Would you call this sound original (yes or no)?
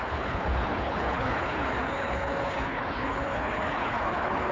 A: no